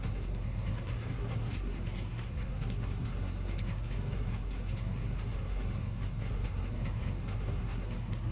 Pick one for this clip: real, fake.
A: fake